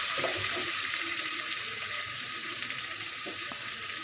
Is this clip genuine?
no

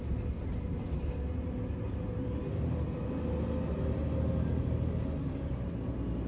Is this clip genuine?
yes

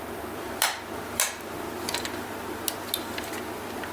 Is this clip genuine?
yes